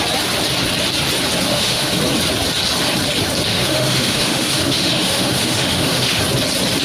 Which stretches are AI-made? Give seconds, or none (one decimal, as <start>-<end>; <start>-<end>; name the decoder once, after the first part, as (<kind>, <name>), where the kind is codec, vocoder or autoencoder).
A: 1.5-2.0 (autoencoder, DAC-VAE); 3.5-6.2